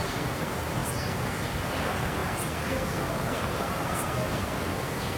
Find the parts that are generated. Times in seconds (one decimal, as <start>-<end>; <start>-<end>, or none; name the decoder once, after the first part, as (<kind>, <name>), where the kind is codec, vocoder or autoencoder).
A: 0.0-5.2 (codec, SNAC)